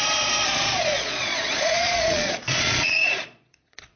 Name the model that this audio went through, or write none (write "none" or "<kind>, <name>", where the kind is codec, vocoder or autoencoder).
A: vocoder, Vocos